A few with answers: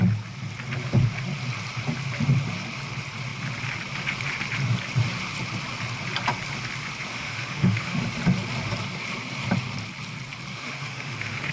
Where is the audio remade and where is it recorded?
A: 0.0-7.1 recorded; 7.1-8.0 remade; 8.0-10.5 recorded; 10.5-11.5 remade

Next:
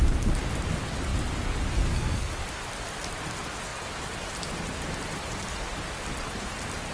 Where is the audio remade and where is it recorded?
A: 0.0-1.8 recorded; 1.8-2.4 remade; 2.4-6.9 recorded

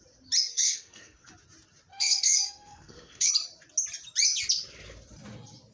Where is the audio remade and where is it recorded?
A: 0.0-0.5 recorded; 0.5-1.3 remade; 1.3-1.9 recorded; 1.9-3.3 remade; 3.3-5.7 recorded